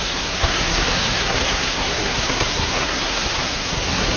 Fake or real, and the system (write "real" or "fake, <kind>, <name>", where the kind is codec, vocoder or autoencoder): fake, codec, SNAC